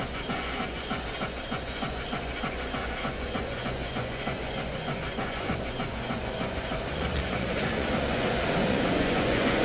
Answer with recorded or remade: remade